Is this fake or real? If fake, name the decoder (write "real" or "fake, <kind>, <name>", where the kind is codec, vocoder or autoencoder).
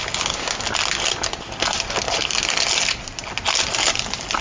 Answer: real